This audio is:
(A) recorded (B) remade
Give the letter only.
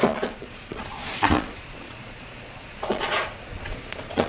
B